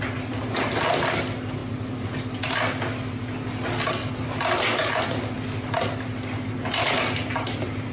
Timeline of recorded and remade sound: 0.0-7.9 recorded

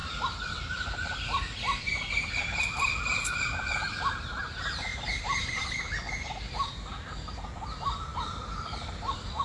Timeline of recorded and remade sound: 0.0-9.4 remade

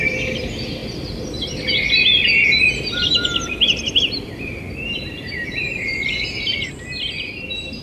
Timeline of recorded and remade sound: 0.0-0.8 remade; 0.8-4.2 recorded; 4.2-5.9 remade; 5.9-7.3 recorded; 7.3-7.8 remade